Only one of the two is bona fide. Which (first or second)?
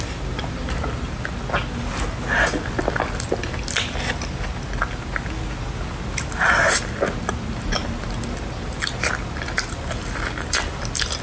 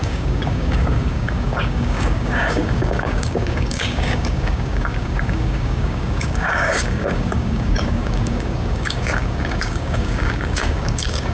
first